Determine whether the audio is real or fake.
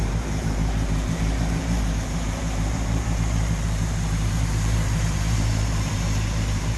fake